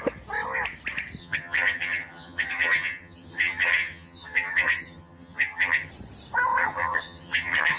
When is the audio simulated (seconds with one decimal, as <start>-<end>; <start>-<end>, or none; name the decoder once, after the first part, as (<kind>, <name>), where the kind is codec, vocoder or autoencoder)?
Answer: 1.2-5.9 (vocoder, HiFi-GAN); 6.6-7.8